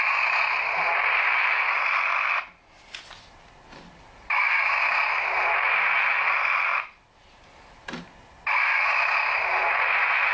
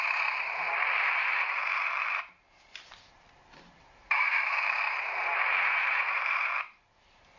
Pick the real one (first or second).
first